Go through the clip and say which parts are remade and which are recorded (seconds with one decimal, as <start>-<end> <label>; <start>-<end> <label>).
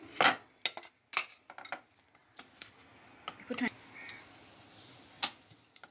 0.0-5.9 recorded